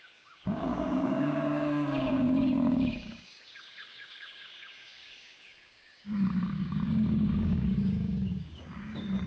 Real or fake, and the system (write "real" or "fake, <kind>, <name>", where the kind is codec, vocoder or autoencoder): fake, codec, DAC